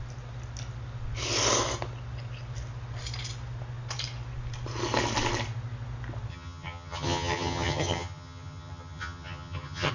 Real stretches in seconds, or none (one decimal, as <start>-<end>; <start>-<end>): 0.0-6.3